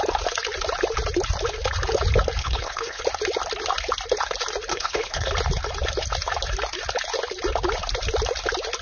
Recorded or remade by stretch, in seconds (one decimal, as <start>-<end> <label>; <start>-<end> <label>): 0.0-2.4 recorded; 2.4-3.0 remade; 3.0-4.7 recorded; 4.7-5.3 remade; 5.3-8.8 recorded